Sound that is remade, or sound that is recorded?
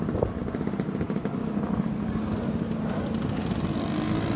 recorded